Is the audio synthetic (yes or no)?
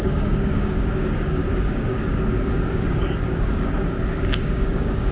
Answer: yes